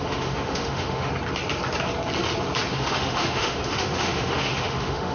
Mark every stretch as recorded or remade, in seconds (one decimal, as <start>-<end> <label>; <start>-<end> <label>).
0.0-1.1 remade; 1.1-2.7 recorded; 2.7-5.1 remade